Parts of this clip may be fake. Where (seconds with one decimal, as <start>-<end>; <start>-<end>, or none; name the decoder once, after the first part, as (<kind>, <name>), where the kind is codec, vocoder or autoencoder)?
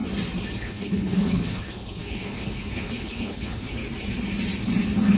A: 0.6-3.8 (codec, HILCodec)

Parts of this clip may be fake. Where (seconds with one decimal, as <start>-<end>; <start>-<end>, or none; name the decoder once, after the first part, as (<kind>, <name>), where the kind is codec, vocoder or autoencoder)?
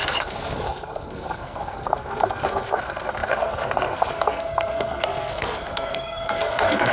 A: 0.0-6.9 (codec, SNAC)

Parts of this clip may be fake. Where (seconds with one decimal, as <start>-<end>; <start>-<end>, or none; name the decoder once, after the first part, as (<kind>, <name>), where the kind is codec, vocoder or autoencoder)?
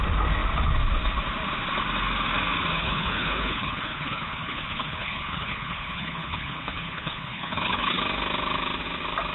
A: 2.7-8.0 (codec, HILCodec)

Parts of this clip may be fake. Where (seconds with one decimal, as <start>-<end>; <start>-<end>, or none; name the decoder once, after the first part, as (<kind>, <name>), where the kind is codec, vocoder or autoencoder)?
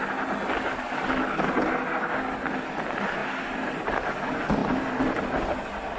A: 0.7-1.5 (codec, DAC)